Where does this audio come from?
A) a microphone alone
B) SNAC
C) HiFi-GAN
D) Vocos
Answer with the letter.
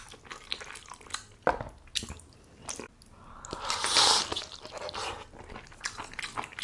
A